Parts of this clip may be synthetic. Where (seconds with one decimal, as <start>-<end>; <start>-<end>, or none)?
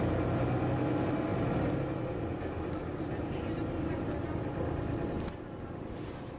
none